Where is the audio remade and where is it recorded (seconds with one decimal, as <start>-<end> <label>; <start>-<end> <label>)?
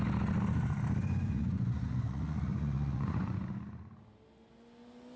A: 0.0-1.0 recorded; 1.0-3.6 remade; 3.6-5.2 recorded